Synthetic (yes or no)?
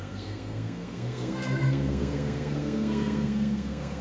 yes